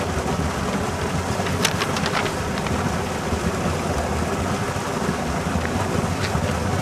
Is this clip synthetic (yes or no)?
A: no